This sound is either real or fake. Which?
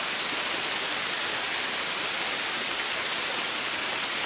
real